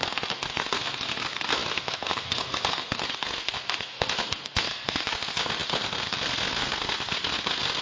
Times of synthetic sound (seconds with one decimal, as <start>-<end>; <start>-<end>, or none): 0.0-7.8